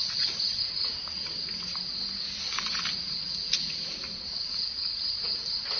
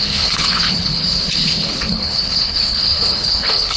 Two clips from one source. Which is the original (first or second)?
first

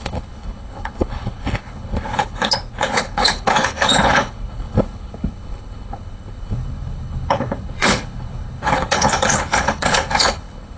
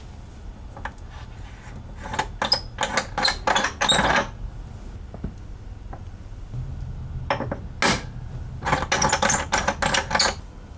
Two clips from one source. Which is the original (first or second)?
second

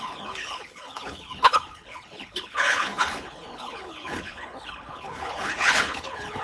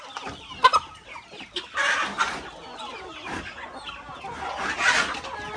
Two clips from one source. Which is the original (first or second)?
second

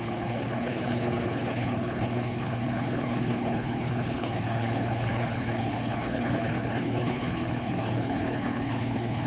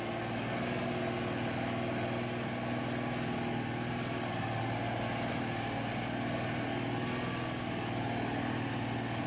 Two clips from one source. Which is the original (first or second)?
second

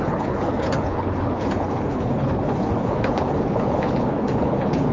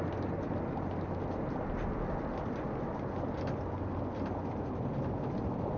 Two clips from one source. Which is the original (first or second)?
second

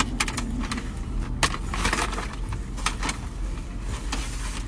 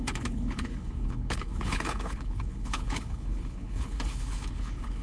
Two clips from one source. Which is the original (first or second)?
first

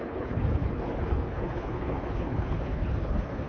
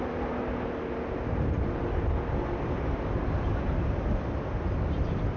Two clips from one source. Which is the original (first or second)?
second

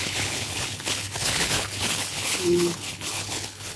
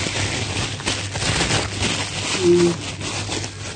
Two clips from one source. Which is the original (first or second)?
second